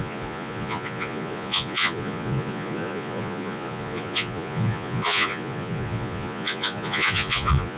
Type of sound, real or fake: fake